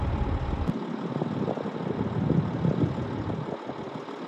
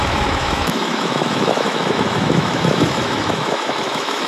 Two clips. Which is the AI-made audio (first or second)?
second